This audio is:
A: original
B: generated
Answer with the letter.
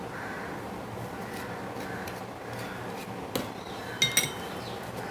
A